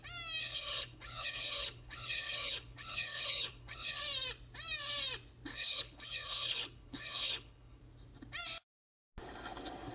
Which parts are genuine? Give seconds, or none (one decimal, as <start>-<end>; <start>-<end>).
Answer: 0.0-0.4; 4.0-5.5; 7.8-9.9